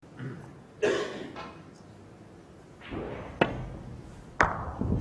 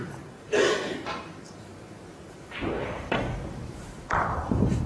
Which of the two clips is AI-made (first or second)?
second